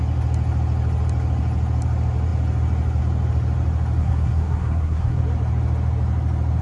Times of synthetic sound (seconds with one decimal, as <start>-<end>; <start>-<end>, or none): 4.0-5.2